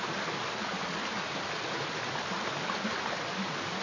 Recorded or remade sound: recorded